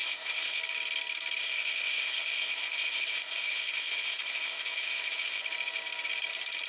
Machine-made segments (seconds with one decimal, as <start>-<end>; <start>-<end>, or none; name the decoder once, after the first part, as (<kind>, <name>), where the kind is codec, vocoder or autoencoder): 0.0-0.6 (codec, ZipCodec); 1.4-5.4